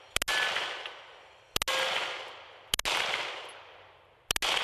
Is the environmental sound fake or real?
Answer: real